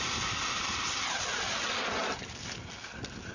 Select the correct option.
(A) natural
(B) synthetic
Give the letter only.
A